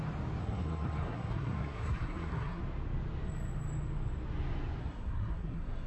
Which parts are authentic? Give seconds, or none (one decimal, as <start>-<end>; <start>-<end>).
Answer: 0.0-0.4; 2.6-4.8